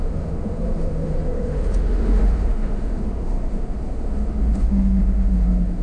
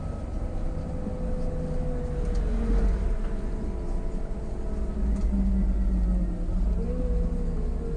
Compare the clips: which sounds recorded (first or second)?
second